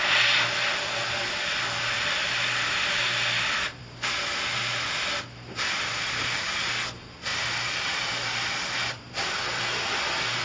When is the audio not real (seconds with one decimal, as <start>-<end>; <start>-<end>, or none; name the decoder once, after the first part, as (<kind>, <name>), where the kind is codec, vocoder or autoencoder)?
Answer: none